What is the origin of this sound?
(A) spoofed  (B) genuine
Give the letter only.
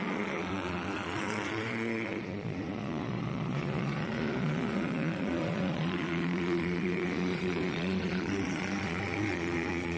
A